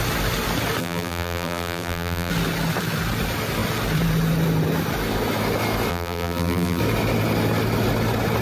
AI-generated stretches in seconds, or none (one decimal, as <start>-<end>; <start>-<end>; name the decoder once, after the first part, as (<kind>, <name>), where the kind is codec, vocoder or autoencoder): 0.8-2.3 (vocoder, BigVGAN v2); 5.9-6.8